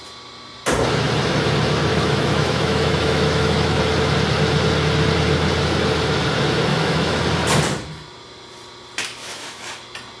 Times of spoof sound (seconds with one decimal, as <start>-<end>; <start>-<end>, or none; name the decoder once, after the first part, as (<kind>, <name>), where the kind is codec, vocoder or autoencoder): 1.9-3.8 (autoencoder, DAC-VAE); 6.7-7.2; 9.2-9.7